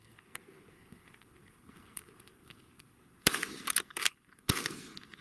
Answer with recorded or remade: remade